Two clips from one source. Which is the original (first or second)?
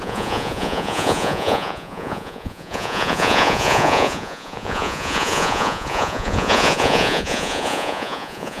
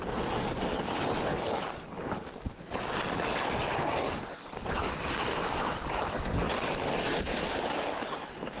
second